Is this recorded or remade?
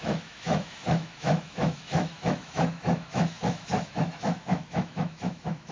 remade